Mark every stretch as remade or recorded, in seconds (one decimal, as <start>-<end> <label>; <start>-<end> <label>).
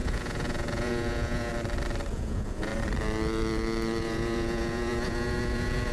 0.0-1.5 remade; 1.5-2.1 recorded; 2.1-2.7 remade; 2.7-4.0 recorded; 4.0-5.9 remade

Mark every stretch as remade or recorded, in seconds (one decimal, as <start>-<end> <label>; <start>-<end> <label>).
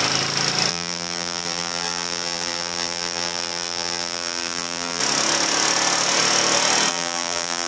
0.0-0.7 recorded; 0.7-5.0 remade; 5.0-6.9 recorded; 6.9-7.7 remade